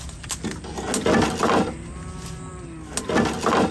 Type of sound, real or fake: real